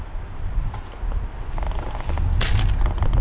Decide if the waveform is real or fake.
real